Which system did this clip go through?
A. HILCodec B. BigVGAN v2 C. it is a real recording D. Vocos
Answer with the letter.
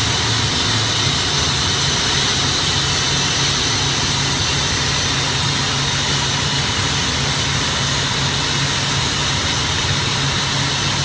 C